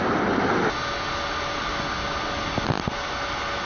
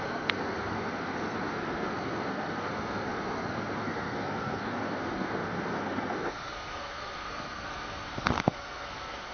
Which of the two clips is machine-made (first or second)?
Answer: second